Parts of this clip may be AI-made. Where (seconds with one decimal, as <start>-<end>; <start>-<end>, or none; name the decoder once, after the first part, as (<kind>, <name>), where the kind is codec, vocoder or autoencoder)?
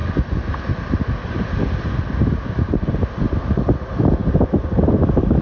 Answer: none